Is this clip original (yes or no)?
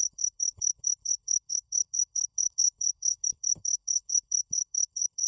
no